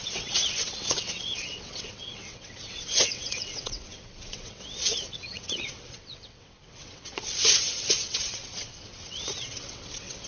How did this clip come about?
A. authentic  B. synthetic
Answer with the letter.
B